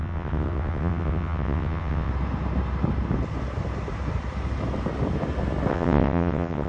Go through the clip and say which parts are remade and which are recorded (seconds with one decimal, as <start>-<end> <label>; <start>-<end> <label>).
0.0-2.1 remade; 2.1-5.7 recorded; 5.7-6.7 remade